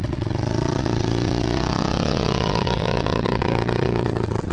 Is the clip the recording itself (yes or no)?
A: no